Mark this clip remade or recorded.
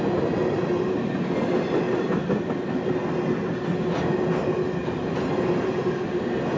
recorded